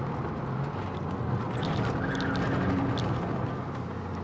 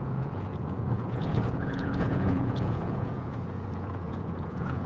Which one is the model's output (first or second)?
second